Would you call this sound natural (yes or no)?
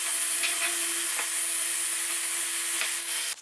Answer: yes